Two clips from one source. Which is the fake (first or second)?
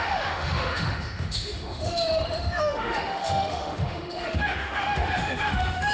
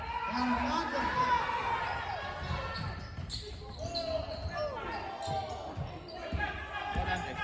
first